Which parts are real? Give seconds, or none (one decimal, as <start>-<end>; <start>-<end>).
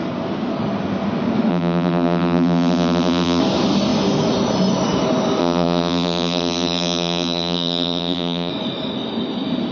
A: 0.0-1.5; 3.4-5.4; 8.5-9.7